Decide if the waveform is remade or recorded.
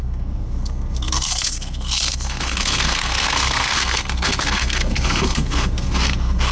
remade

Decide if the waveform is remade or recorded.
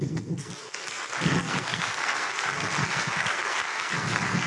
remade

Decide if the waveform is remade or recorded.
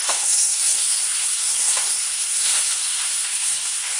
remade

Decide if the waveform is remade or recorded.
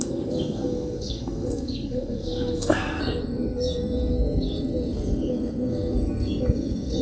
remade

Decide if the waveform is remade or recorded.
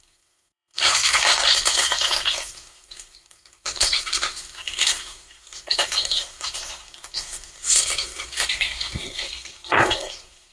remade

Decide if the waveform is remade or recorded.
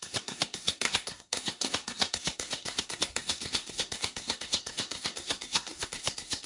remade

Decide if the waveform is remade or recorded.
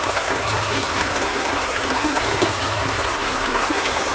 remade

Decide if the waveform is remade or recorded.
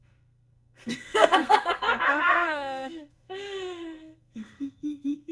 remade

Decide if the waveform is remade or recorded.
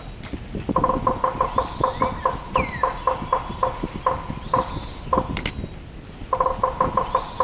recorded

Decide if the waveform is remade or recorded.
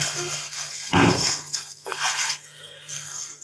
remade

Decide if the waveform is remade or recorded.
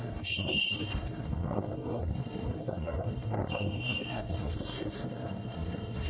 remade